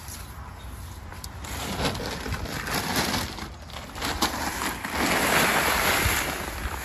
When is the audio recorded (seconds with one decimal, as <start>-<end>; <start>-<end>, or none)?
0.0-6.8